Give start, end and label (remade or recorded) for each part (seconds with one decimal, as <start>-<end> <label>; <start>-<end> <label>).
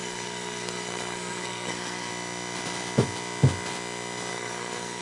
0.0-2.1 remade; 2.1-4.3 recorded; 4.3-5.0 remade